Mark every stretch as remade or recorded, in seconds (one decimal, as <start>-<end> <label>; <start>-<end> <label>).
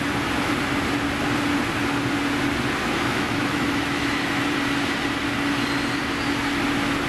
0.0-2.8 recorded; 2.8-4.5 remade; 4.5-7.1 recorded